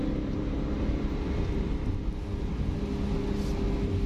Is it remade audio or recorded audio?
recorded